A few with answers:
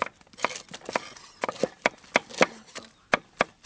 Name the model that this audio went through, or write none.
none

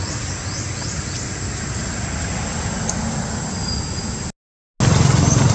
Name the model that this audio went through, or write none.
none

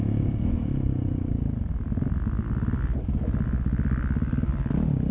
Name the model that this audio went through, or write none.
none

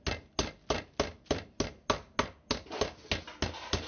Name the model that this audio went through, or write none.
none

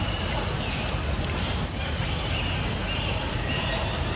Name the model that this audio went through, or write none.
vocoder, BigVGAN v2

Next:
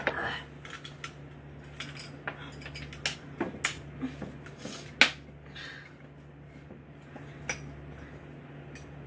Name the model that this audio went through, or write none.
none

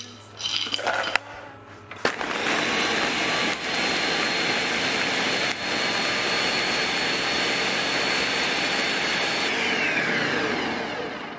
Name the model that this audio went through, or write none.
none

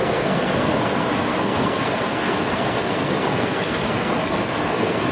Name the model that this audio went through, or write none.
codec, SNAC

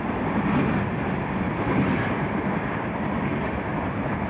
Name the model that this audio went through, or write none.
none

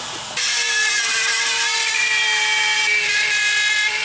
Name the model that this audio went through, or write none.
vocoder, BigVGAN v2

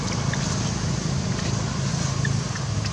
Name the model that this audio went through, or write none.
none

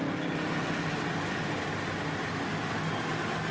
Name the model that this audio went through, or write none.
none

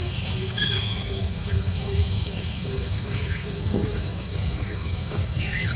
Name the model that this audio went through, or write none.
codec, SNAC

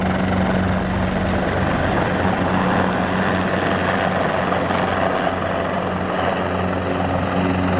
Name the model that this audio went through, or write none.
none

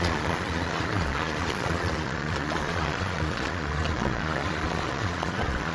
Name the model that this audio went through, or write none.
vocoder, Vocos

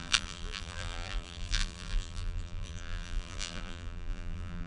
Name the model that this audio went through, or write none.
vocoder, BigVGAN v2